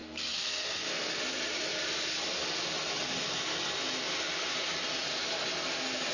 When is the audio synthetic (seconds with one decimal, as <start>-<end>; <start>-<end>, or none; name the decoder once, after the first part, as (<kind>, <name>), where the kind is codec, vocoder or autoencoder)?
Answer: 0.0-1.2 (codec, SNAC)